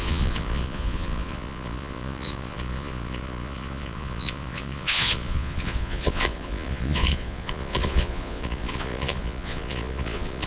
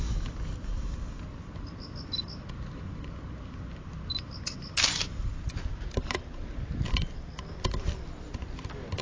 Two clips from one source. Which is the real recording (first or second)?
second